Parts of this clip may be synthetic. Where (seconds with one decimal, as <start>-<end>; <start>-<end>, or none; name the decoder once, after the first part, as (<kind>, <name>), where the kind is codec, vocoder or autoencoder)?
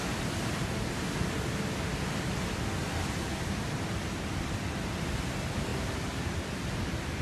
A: none